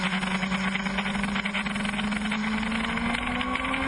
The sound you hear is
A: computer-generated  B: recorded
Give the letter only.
B